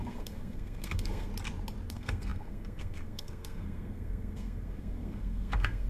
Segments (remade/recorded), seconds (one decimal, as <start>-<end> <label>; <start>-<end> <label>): 0.0-1.3 remade; 1.3-1.9 recorded; 1.9-5.9 remade